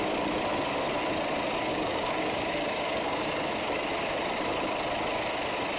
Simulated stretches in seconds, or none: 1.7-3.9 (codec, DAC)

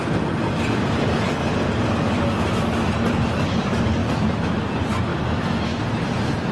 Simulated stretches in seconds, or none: 5.1-5.8 (autoencoder, DAC-VAE)

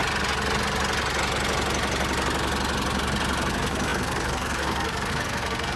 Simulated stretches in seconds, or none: 3.5-5.8 (codec, SNAC)

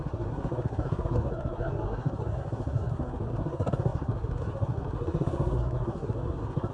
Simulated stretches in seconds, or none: 0.0-6.7 (codec, SNAC)